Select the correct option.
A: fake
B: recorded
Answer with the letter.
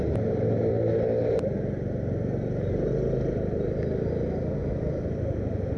B